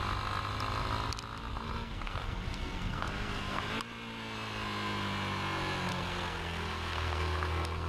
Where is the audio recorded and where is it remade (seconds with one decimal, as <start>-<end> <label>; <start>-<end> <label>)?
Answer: 0.0-1.5 recorded; 1.5-3.6 remade; 3.6-5.9 recorded; 5.9-7.9 remade